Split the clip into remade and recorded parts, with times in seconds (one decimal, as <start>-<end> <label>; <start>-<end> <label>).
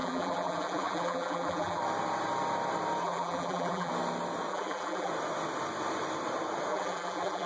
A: 0.0-1.8 remade; 1.8-3.0 recorded; 3.0-3.9 remade; 3.9-4.5 recorded; 4.5-5.1 remade; 5.1-6.7 recorded; 6.7-7.5 remade